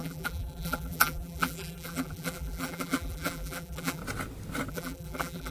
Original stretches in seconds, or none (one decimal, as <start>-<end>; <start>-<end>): 4.0-4.7